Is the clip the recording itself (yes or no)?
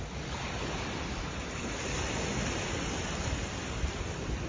yes